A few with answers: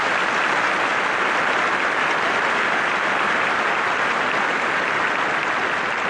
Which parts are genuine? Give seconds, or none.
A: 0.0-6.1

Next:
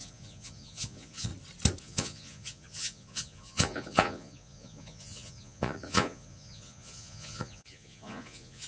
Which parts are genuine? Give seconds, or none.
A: 1.3-1.8

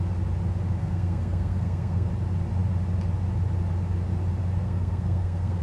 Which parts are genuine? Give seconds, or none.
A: 0.0-0.8; 2.1-4.6

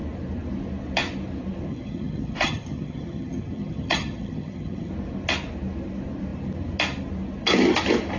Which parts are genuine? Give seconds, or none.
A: 0.0-1.7; 4.9-8.2